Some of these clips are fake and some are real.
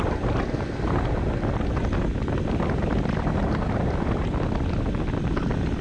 real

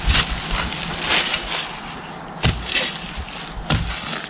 real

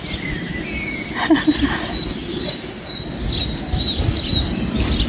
real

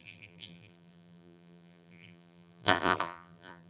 fake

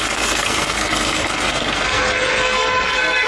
fake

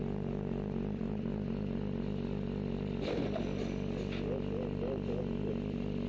real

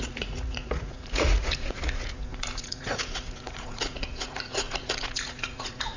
fake